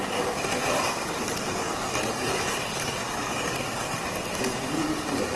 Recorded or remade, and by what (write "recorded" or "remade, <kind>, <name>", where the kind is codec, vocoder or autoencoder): recorded